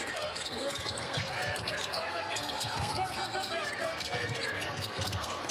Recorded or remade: remade